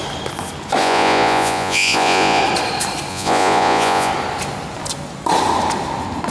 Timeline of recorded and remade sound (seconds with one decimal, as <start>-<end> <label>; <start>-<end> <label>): 0.0-0.8 recorded; 0.8-2.4 remade; 2.4-3.1 recorded; 3.1-4.1 remade; 4.1-6.3 recorded